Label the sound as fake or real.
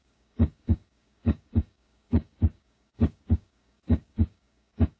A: fake